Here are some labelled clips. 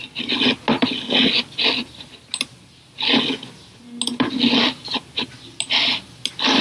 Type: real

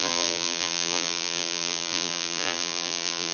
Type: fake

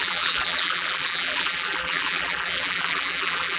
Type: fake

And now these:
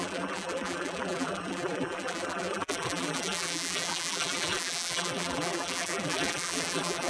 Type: fake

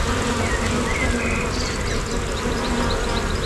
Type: real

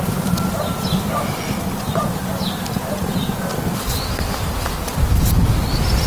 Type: real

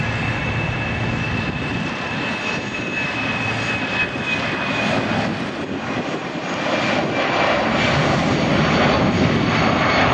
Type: real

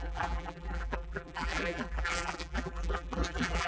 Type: fake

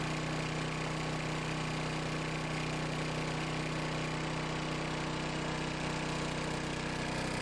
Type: real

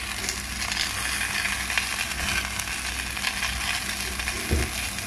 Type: real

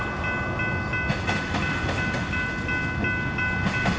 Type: real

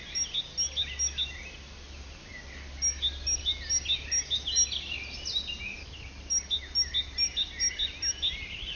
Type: real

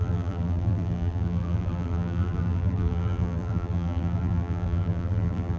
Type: fake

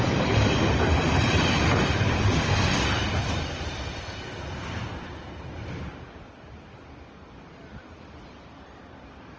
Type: real